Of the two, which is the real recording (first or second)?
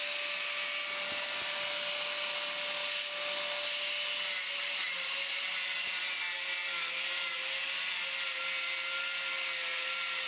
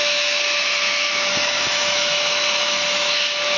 first